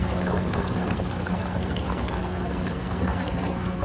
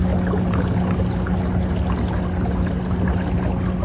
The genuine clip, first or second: second